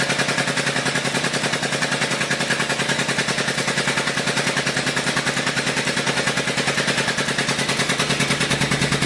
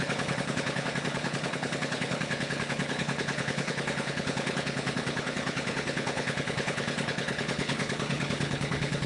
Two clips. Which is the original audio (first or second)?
first